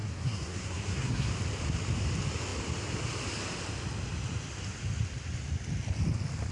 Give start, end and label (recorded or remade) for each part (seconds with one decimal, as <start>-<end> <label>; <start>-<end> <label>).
0.0-1.3 remade; 1.3-6.5 recorded